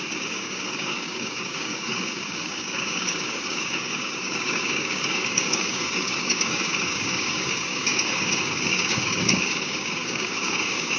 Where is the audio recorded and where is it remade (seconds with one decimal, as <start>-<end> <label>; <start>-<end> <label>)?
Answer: 0.0-11.0 remade